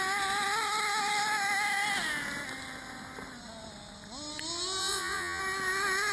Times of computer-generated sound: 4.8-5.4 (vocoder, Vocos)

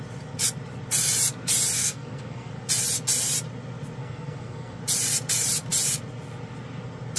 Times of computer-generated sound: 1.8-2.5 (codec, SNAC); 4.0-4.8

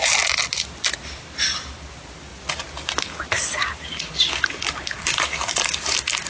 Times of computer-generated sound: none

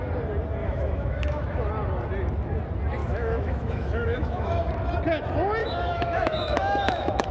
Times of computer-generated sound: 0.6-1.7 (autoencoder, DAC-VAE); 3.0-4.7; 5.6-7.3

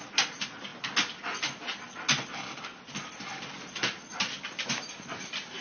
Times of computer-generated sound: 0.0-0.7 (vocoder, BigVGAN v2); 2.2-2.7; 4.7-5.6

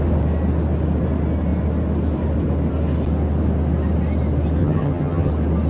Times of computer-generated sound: 4.6-5.3 (vocoder, HiFi-GAN)

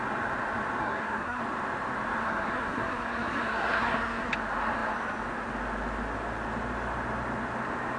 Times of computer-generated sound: 0.8-1.4 (codec, SNAC); 2.2-4.3